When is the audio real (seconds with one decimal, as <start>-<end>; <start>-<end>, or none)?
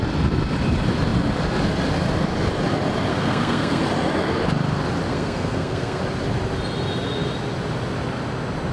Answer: 0.0-3.1; 3.8-5.1; 6.0-8.7